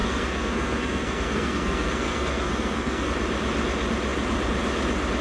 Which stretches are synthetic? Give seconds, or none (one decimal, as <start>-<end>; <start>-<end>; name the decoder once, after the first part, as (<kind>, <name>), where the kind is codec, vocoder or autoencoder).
0.0-3.1 (codec, SNAC)